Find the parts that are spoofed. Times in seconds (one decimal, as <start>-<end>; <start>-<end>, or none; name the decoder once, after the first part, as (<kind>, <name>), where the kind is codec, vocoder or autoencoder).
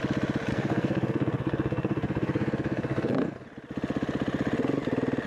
0.5-3.4 (codec, SNAC)